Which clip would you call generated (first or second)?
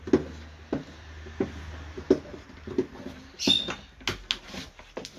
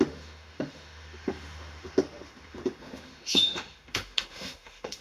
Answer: second